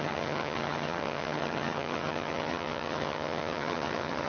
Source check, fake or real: fake